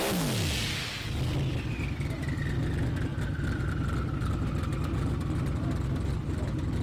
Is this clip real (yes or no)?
yes